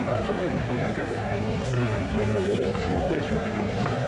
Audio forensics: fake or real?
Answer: fake